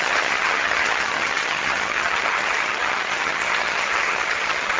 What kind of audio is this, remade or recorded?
remade